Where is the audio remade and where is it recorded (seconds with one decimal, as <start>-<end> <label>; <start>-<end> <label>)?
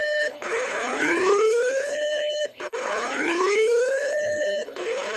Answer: 0.0-5.2 remade